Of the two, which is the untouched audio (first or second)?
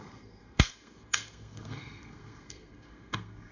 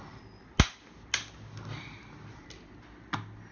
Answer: second